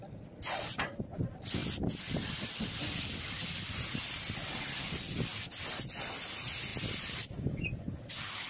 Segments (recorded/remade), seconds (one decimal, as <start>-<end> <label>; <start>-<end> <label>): 0.0-5.3 recorded; 5.3-5.9 remade; 5.9-6.7 recorded; 6.7-7.8 remade; 7.8-8.5 recorded